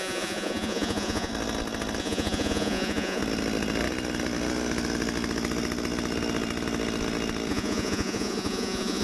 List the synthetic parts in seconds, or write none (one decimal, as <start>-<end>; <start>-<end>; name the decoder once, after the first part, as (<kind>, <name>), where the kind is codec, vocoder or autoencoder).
0.0-1.3 (vocoder, Vocos); 2.0-3.2; 7.5-9.0